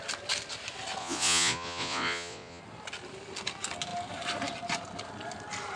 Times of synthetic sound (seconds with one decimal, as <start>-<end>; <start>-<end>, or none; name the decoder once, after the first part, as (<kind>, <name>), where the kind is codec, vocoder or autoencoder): 1.0-2.6 (vocoder, Vocos)